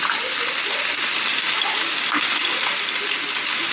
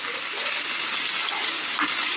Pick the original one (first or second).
first